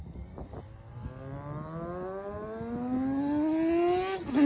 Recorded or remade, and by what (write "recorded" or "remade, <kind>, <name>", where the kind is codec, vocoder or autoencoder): recorded